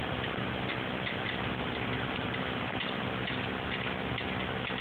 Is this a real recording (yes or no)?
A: yes